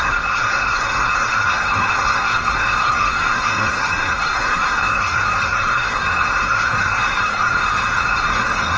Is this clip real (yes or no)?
no